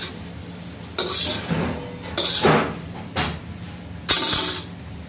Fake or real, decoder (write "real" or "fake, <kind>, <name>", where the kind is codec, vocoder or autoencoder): real